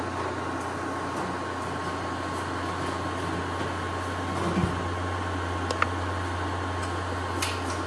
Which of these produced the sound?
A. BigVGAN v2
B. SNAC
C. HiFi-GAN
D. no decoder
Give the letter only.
D